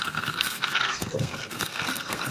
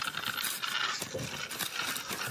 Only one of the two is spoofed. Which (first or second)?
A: first